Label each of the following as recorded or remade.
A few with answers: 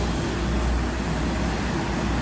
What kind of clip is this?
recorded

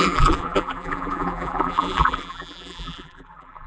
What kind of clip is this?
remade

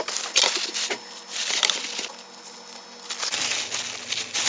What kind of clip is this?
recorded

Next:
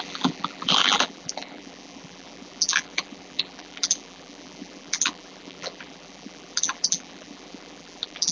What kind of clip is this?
remade